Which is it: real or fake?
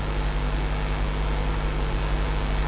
real